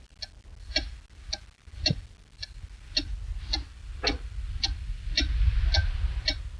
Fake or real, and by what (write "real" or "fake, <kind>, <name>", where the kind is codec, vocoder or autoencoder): real